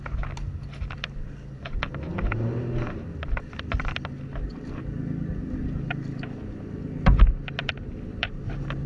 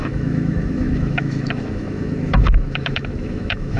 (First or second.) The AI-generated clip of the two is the second